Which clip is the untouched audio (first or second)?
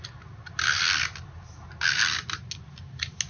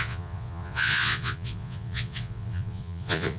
first